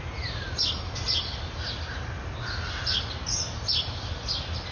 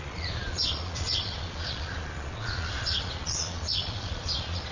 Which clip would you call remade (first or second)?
second